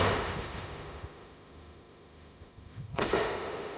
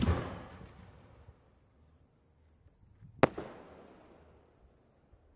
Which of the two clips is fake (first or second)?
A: first